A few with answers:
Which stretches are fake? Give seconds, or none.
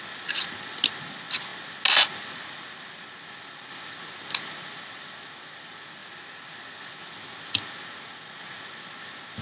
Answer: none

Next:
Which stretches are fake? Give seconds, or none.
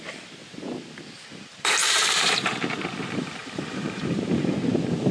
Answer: 0.0-5.1 (vocoder, BigVGAN v2)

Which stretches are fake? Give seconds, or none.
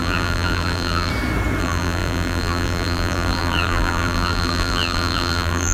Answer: 0.0-1.1 (vocoder, BigVGAN v2); 1.6-5.7